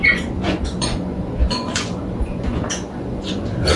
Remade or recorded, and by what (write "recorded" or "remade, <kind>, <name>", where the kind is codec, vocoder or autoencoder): remade, vocoder, Vocos